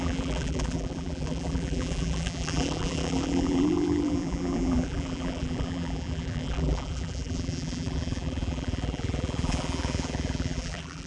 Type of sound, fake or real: fake